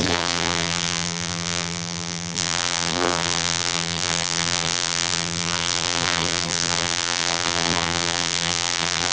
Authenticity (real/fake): fake